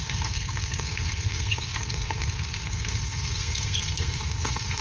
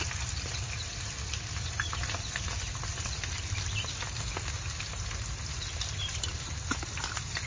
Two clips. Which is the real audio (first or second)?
second